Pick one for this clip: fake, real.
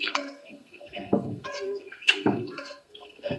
fake